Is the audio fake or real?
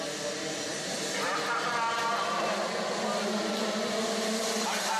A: real